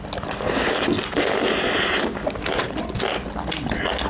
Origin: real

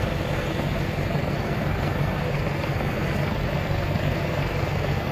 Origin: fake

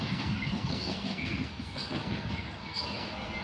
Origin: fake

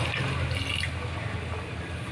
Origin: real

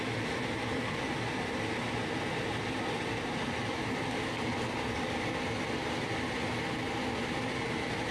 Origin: real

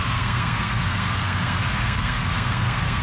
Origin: fake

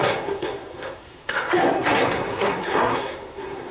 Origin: fake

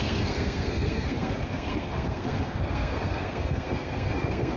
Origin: fake